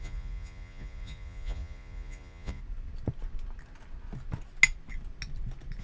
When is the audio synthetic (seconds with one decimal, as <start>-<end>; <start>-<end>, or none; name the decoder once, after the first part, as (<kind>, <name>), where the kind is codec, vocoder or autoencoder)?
0.0-2.6 (vocoder, Vocos)